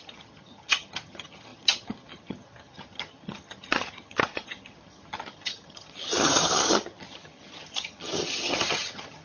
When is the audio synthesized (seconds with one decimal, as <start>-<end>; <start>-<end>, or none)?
0.0-9.2